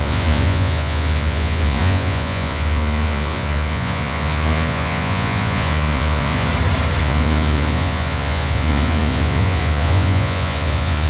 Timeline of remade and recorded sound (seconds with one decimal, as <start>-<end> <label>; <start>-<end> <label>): 0.0-6.5 remade; 6.5-7.0 recorded; 7.0-11.1 remade